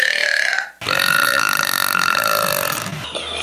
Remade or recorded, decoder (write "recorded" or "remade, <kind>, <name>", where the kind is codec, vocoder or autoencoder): recorded